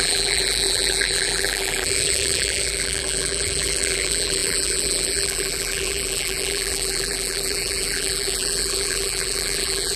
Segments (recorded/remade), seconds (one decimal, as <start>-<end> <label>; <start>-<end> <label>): 0.0-10.0 remade